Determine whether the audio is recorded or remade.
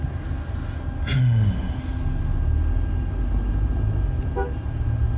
recorded